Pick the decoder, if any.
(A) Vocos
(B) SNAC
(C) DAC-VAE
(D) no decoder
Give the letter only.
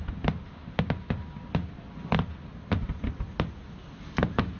D